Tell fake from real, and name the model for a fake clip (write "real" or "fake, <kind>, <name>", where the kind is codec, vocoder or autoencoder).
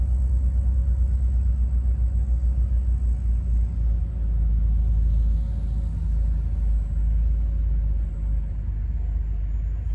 real